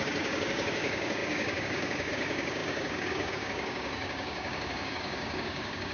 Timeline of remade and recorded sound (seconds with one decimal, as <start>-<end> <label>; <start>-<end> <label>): 0.0-5.9 remade

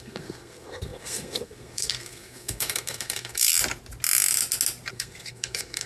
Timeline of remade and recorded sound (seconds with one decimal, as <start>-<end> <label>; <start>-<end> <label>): 0.0-3.5 remade; 3.5-4.9 recorded; 4.9-5.9 remade

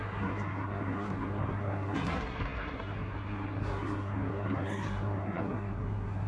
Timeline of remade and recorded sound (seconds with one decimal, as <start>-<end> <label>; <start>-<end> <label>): 0.0-6.3 remade

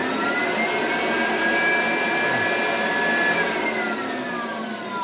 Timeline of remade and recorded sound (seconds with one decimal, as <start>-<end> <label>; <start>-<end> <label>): 0.0-5.0 recorded

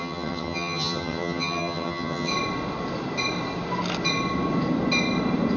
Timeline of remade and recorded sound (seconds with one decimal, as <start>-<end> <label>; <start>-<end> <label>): 0.0-2.3 remade; 2.3-5.6 recorded